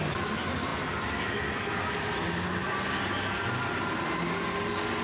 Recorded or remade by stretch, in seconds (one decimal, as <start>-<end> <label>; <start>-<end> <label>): 0.0-5.0 recorded